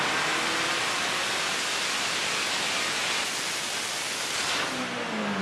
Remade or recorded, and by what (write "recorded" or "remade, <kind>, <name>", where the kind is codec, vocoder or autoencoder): recorded